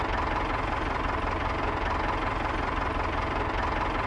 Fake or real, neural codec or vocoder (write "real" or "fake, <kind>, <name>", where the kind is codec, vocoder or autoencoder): real